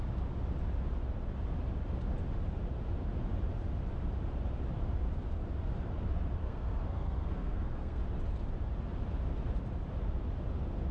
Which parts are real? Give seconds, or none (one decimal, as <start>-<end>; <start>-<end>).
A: 0.0-6.4; 8.0-10.9